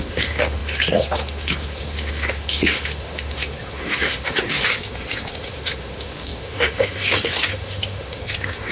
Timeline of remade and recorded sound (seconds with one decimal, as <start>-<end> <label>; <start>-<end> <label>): 0.0-8.7 remade